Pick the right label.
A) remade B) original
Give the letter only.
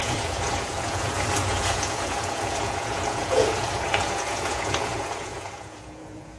A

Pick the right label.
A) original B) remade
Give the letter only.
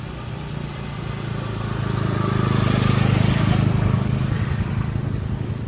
A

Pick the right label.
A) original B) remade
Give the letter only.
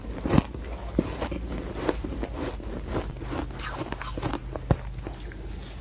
A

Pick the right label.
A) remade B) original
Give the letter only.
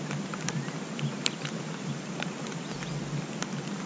B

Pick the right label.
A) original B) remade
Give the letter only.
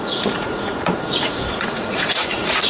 B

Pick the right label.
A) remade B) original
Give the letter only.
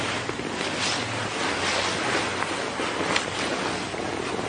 B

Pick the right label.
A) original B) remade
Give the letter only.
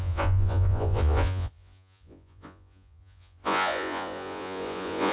B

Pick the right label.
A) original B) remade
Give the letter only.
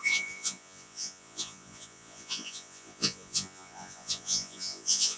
B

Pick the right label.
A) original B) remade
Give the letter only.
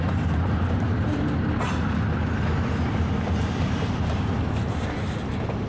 A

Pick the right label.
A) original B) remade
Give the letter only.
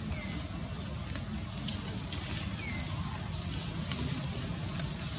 A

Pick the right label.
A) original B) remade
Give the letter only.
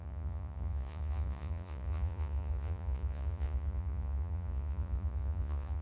B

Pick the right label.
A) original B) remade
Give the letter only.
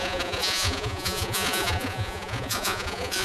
B